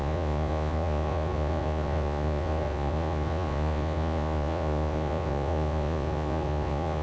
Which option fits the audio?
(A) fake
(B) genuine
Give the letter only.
A